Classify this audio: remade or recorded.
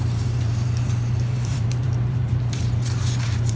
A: remade